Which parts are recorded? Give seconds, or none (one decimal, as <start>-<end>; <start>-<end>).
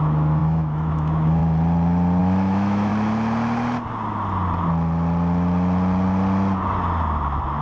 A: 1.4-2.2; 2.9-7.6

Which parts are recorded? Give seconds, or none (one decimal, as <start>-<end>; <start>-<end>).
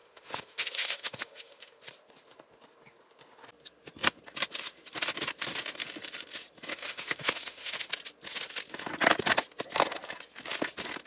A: 1.8-6.7; 7.9-11.1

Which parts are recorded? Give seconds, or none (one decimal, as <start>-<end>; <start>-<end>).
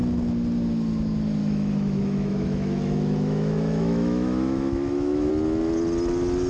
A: 0.0-1.4; 5.3-6.5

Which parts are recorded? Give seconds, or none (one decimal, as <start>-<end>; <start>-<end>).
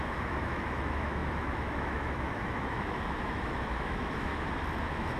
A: 4.3-4.8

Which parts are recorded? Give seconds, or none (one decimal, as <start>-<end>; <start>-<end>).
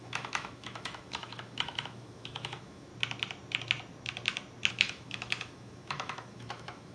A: 2.9-4.7